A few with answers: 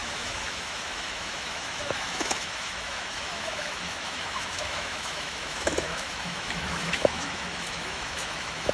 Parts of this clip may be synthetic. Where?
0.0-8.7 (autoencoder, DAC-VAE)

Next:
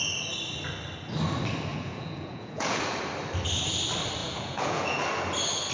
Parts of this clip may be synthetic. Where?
1.7-2.8 (vocoder, Vocos); 4.2-5.0

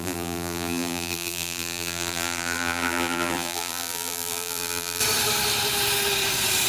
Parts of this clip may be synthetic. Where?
0.0-5.0 (vocoder, BigVGAN v2)

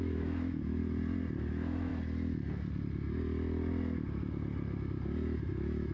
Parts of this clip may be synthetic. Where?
0.0-0.8 (autoencoder, DAC-VAE); 1.5-1.9; 5.4-5.9

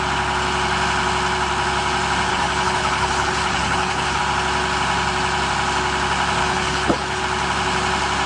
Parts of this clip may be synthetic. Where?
2.3-4.2 (codec, HILCodec); 6.4-7.2

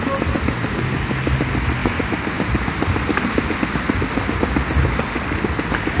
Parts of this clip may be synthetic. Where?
none

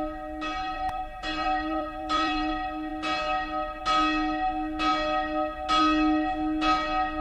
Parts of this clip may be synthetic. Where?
0.6-2.5 (vocoder, BigVGAN v2)